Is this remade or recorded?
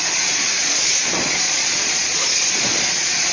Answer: remade